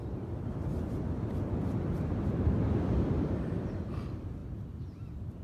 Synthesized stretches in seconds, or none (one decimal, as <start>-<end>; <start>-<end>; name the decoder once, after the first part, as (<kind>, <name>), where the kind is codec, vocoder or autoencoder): 4.4-5.4 (vocoder, BigVGAN v2)